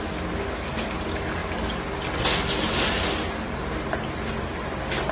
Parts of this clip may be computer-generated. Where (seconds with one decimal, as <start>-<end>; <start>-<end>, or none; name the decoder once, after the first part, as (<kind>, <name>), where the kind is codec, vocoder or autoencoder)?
none